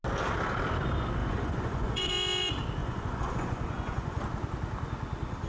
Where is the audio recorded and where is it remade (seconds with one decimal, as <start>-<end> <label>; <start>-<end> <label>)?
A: 0.0-1.2 recorded; 1.2-2.1 remade; 2.1-2.8 recorded; 2.8-4.2 remade; 4.2-5.5 recorded